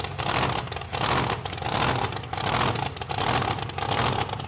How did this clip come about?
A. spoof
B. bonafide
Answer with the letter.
B